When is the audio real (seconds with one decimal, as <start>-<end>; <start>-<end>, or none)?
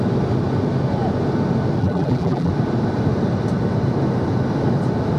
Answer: 0.0-1.8; 2.5-5.2